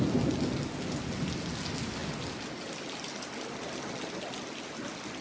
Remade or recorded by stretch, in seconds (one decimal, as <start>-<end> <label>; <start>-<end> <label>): 0.0-5.2 recorded